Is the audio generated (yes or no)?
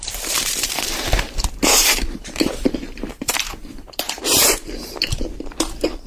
yes